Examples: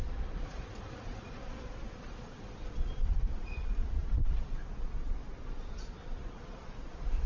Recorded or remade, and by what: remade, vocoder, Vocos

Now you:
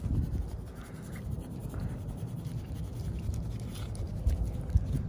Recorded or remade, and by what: recorded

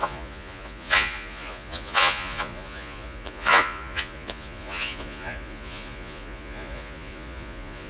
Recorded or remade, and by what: remade, vocoder, Vocos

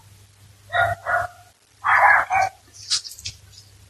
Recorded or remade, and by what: recorded